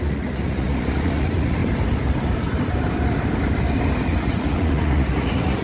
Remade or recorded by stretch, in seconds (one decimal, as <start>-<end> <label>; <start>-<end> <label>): 0.0-1.6 remade; 1.6-4.0 recorded; 4.0-5.6 remade